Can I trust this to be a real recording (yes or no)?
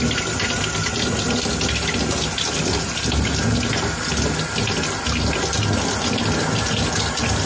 yes